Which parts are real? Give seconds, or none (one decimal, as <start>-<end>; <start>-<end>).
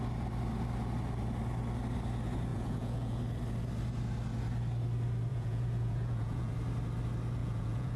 0.0-2.5; 3.2-5.3; 6.5-7.4